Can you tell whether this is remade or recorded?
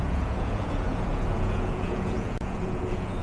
remade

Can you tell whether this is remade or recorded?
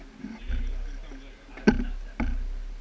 recorded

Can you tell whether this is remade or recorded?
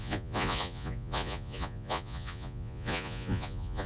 remade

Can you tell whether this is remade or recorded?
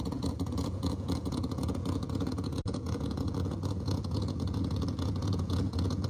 remade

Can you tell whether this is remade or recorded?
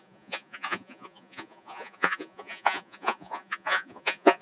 remade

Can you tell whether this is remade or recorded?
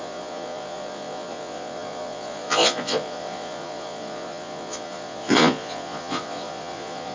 remade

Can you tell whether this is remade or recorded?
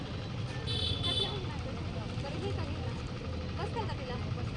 recorded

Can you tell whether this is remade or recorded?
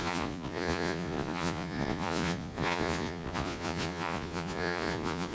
remade